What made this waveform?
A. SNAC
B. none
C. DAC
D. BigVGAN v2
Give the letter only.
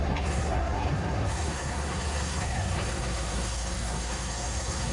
A